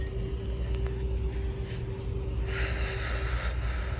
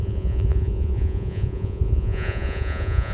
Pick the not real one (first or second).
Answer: second